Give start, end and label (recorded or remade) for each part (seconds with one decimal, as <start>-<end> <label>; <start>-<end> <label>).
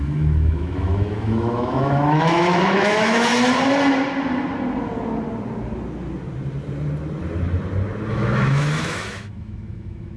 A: 0.0-3.3 remade; 3.3-8.1 recorded; 8.1-10.2 remade